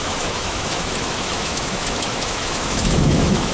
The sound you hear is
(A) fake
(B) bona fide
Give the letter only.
A